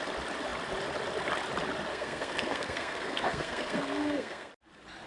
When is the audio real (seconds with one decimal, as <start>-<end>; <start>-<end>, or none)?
0.0-1.9; 4.5-5.1